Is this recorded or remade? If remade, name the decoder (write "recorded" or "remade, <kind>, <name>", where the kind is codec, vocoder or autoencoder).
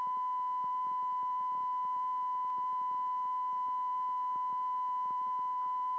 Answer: recorded